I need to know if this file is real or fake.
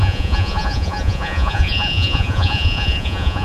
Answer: fake